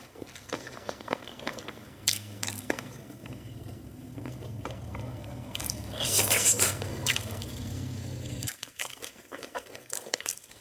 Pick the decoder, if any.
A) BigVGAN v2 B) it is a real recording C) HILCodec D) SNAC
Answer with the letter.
D